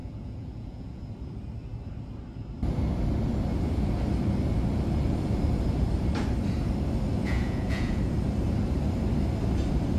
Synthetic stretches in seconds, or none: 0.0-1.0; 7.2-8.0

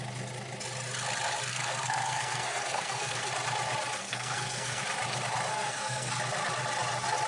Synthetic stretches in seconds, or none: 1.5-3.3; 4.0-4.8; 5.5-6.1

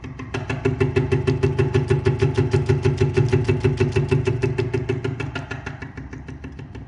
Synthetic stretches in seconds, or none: none